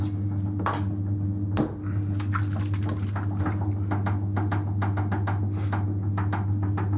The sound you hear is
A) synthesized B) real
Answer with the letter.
B